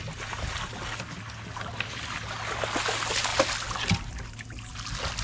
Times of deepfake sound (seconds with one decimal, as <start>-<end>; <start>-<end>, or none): none